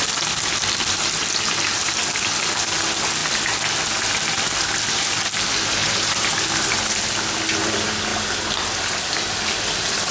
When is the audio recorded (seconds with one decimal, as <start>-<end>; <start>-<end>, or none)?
0.0-5.8; 6.3-10.1